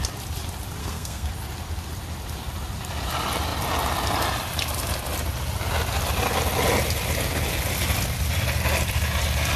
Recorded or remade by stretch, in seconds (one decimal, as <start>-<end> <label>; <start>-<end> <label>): 0.0-0.8 recorded; 0.8-1.3 remade; 1.3-9.6 recorded